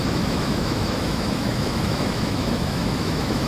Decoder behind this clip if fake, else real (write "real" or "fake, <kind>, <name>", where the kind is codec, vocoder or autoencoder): fake, autoencoder, DAC-VAE